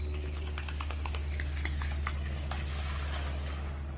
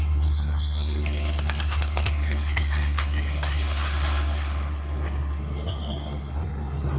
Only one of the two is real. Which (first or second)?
first